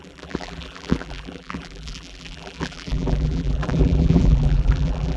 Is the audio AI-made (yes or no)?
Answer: yes